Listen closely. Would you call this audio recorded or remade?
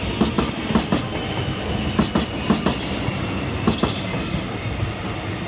recorded